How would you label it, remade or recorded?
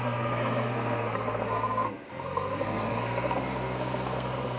remade